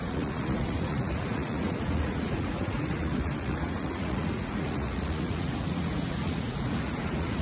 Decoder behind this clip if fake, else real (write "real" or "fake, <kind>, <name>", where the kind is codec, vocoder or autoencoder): fake, vocoder, Vocos